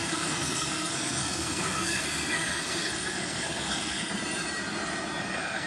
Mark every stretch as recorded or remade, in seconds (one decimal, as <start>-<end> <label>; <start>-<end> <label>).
0.0-4.1 remade; 4.1-5.2 recorded; 5.2-5.7 remade